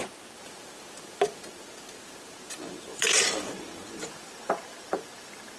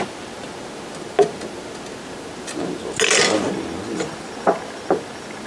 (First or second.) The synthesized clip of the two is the first